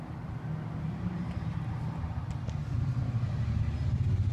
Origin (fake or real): real